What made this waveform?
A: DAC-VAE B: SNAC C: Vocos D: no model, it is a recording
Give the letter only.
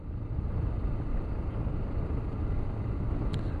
D